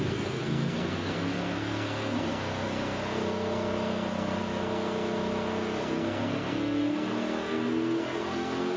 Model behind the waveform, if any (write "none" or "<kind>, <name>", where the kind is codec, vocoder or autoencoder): codec, SNAC